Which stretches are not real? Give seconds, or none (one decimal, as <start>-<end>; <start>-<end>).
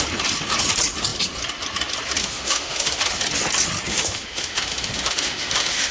2.2-3.0; 3.9-5.9